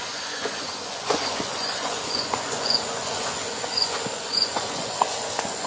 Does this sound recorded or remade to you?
remade